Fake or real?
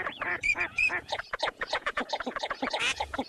fake